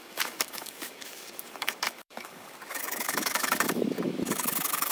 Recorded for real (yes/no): no